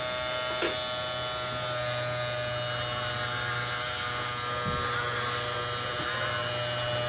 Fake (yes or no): no